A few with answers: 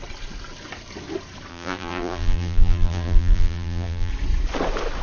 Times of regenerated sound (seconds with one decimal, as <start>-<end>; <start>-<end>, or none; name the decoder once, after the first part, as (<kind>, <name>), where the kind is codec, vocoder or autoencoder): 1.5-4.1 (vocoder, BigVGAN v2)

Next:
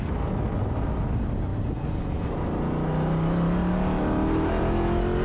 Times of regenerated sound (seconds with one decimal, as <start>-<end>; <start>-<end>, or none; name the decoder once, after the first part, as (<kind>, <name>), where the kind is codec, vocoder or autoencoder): none

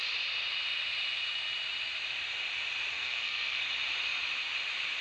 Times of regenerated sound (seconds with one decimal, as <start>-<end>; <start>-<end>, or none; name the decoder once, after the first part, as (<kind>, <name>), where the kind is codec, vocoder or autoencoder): 2.9-3.6 (codec, SNAC)

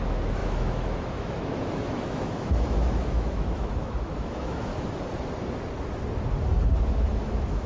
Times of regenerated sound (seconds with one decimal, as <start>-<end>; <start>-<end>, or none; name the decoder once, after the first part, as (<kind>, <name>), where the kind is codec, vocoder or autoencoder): 0.0-4.7 (autoencoder, DAC-VAE); 6.9-7.7

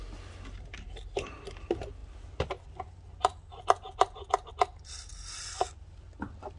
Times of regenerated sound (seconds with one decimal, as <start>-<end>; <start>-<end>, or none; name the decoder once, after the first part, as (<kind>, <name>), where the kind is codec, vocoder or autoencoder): none

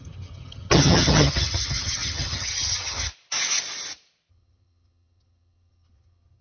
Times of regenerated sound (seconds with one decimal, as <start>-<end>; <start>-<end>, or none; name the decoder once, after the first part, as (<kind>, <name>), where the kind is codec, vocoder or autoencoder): 0.0-3.1 (vocoder, HiFi-GAN); 4.3-6.4

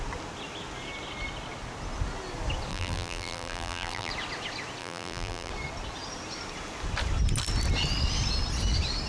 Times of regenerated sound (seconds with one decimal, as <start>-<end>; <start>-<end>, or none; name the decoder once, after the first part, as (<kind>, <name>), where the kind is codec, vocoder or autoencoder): 2.7-4.1 (vocoder, BigVGAN v2); 4.8-5.5